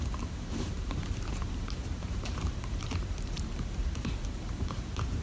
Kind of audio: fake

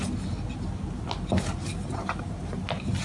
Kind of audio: real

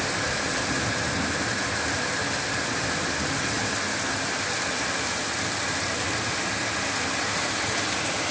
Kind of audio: real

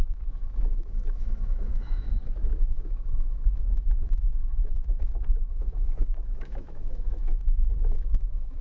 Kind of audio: fake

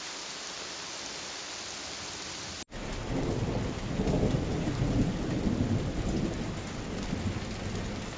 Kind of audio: real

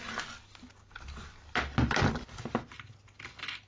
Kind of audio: real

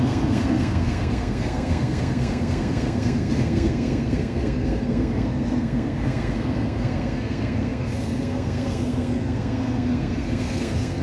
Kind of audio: fake